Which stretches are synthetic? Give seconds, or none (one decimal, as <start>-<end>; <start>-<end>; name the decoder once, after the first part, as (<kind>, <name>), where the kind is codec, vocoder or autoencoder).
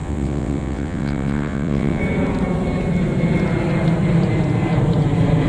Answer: 0.0-2.0 (vocoder, WaveNeXt)